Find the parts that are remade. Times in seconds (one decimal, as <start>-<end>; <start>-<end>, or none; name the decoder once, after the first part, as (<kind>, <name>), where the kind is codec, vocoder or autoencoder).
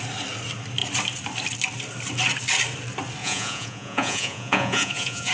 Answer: 3.2-5.3 (vocoder, Vocos)